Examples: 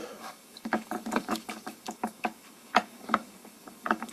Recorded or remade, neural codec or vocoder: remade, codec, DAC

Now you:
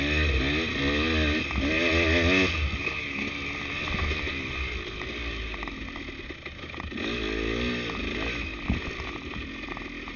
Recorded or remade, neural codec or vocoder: recorded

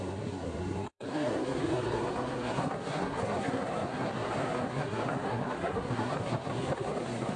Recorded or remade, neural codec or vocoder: remade, codec, SNAC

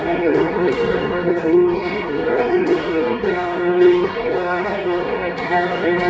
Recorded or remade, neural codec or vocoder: remade, codec, SNAC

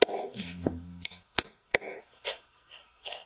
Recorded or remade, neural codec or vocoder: remade, codec, SNAC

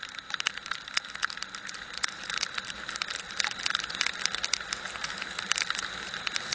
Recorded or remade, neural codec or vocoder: recorded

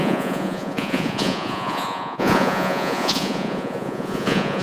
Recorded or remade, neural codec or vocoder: remade, vocoder, Vocos